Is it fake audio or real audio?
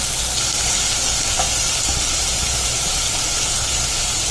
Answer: real